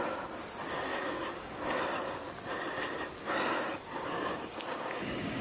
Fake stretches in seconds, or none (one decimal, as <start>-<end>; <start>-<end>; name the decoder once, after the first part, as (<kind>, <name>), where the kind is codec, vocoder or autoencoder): 0.9-1.8 (codec, DAC); 3.2-5.4